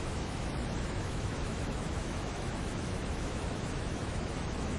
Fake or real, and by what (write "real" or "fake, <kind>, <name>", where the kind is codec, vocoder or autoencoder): fake, autoencoder, DAC-VAE